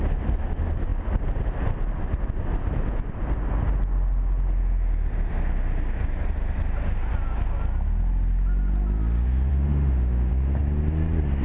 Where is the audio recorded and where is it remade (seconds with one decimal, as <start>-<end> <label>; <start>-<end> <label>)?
0.0-9.5 recorded; 9.5-10.3 remade; 10.3-11.4 recorded

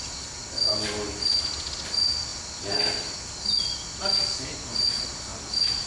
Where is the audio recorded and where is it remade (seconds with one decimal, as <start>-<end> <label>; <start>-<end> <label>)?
0.0-5.9 recorded

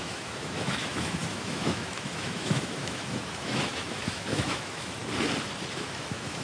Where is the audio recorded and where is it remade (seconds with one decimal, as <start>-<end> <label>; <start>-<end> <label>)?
0.0-5.0 remade; 5.0-5.7 recorded; 5.7-6.4 remade

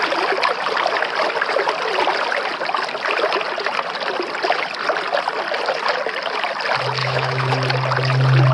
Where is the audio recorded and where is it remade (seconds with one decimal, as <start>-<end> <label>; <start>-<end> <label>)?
0.0-7.0 recorded; 7.0-7.5 remade; 7.5-8.5 recorded

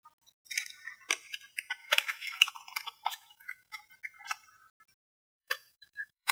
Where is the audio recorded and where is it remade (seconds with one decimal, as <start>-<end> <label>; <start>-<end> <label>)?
0.0-1.8 recorded; 1.8-2.5 remade; 2.5-3.1 recorded; 3.1-3.8 remade; 3.8-5.3 recorded; 5.3-6.3 remade

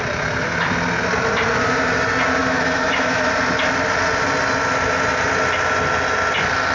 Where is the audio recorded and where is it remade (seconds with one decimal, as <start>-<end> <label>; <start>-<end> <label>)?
0.0-2.4 recorded; 2.4-3.3 remade; 3.3-6.7 recorded